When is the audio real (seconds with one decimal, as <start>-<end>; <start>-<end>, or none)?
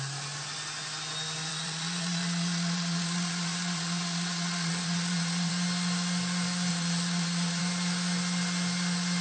0.0-1.5; 5.5-6.7; 7.6-9.2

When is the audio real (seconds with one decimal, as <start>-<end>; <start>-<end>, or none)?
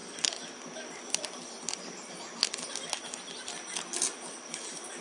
0.0-5.0